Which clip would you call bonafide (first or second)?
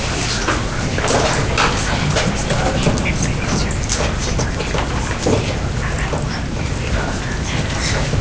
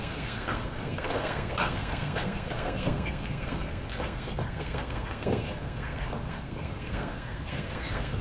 first